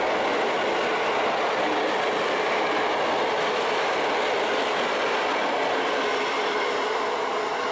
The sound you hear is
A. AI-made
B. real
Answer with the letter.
B